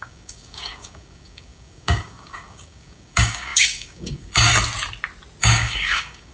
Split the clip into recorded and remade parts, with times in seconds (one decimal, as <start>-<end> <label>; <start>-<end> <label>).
0.0-4.5 remade; 4.5-5.4 recorded; 5.4-6.3 remade